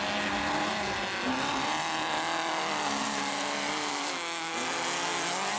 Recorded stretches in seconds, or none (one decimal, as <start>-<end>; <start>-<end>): 0.0-3.9; 4.5-5.6